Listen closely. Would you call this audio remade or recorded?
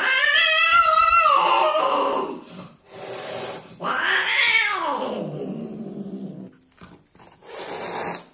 recorded